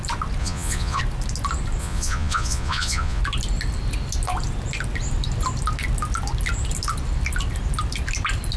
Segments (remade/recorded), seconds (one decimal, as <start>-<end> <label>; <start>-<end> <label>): 0.0-0.4 recorded; 0.4-1.0 remade; 1.0-1.8 recorded; 1.8-3.2 remade; 3.2-8.6 recorded

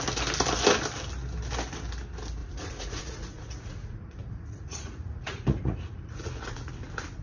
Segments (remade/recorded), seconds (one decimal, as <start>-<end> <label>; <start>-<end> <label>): 0.0-2.4 recorded; 2.4-6.7 remade; 6.7-7.2 recorded

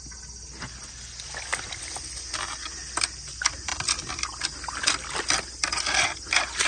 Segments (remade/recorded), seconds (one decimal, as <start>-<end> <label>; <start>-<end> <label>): 0.0-6.7 recorded

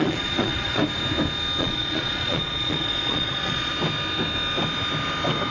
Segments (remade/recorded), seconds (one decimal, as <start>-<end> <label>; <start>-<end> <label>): 0.0-0.8 remade; 0.8-1.6 recorded; 1.6-3.7 remade; 3.7-5.5 recorded

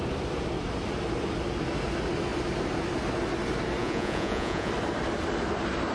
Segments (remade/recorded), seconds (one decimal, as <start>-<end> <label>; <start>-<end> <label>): 0.0-3.8 recorded; 3.8-4.7 remade; 4.7-5.9 recorded

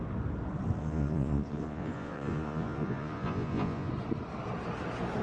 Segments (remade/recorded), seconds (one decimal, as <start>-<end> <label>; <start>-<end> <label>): 0.0-0.8 recorded; 0.8-3.9 remade; 3.9-5.2 recorded